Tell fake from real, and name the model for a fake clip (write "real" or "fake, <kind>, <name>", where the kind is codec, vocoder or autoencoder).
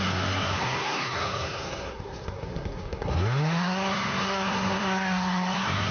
fake, codec, SNAC